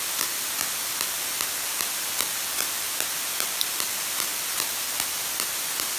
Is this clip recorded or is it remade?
recorded